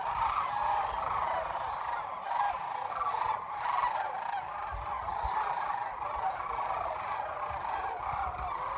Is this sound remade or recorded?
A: recorded